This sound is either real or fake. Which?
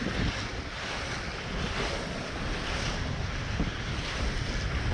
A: real